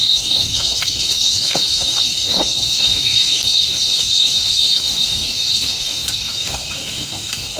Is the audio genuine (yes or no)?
no